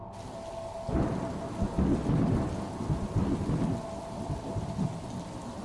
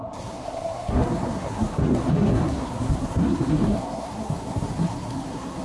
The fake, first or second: second